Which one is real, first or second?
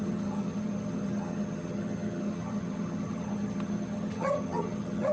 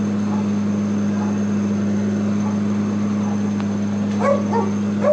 second